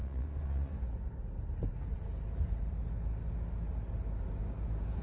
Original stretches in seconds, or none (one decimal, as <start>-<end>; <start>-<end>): 0.7-5.0